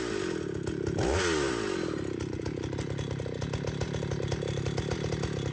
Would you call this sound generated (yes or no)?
no